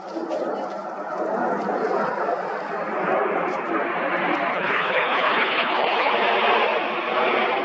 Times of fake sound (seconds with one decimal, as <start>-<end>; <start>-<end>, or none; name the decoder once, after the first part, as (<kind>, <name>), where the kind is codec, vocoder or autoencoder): 4.5-6.1 (codec, HILCodec)